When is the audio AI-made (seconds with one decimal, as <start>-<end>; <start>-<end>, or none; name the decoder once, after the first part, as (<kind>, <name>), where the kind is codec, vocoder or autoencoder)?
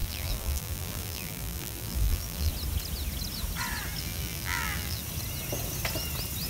0.0-2.5 (vocoder, BigVGAN v2); 4.0-5.0